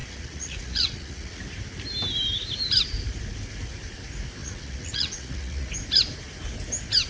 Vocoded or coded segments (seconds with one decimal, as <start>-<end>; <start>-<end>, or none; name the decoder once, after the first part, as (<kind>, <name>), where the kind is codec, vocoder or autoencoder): 0.0-1.4 (vocoder, Vocos); 4.4-5.7